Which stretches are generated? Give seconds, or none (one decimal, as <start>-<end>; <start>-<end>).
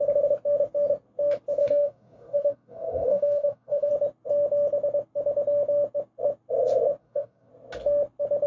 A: 1.6-3.9; 7.0-7.5